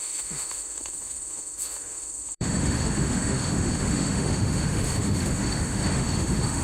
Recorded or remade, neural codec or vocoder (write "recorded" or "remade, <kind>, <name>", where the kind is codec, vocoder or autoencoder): remade, autoencoder, DAC-VAE